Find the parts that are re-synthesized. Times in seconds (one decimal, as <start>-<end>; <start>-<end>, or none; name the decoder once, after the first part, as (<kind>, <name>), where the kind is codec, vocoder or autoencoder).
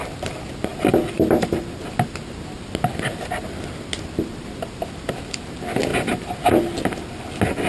none